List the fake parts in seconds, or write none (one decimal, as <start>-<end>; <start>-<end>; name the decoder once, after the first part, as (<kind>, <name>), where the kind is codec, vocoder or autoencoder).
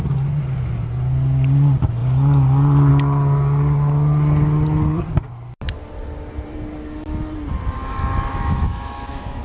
8.3-9.4 (autoencoder, DAC-VAE)